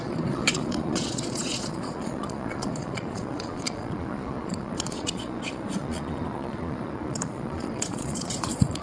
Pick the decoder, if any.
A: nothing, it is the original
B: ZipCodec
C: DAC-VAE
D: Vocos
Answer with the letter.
D